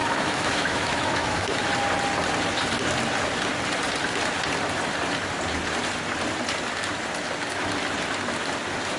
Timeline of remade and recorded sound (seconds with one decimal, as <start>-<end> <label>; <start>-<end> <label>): 0.0-1.7 remade; 1.7-9.0 recorded